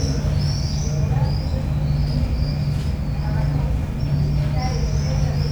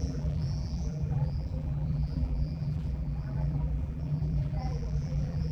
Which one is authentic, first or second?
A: first